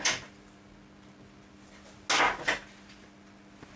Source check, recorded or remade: recorded